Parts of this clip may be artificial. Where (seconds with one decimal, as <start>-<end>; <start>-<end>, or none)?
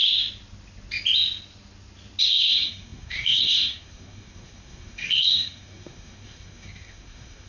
2.2-7.5